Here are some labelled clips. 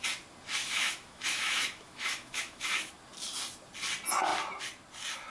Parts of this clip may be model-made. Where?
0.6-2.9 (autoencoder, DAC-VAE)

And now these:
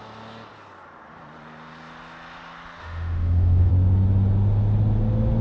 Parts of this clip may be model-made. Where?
2.8-3.7 (autoencoder, DAC-VAE)

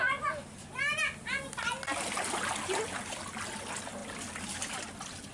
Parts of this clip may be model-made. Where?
none

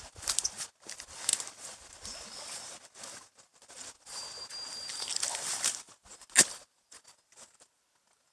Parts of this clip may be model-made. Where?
none

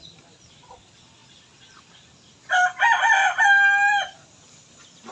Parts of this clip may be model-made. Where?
none

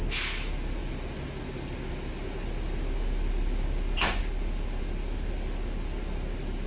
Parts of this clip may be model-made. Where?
none

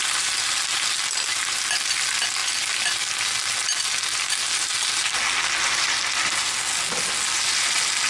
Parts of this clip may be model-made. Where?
none

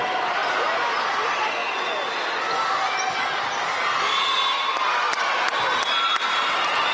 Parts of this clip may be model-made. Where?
none